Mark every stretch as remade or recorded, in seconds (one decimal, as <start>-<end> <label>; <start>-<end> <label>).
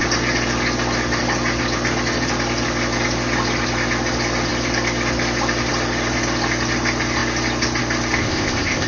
0.0-8.2 recorded; 8.2-8.9 remade